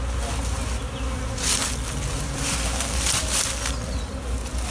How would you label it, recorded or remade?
recorded